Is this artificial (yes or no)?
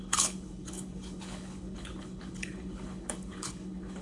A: yes